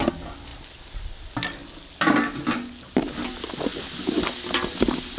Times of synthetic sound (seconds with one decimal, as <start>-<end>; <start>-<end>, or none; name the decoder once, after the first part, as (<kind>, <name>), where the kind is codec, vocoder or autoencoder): none